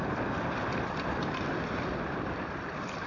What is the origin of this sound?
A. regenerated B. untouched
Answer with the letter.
B